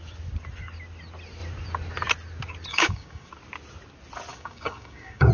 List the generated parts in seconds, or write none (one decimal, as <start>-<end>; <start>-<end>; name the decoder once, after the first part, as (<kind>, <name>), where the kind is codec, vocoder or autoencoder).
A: 2.7-3.3 (codec, DAC); 4.3-5.3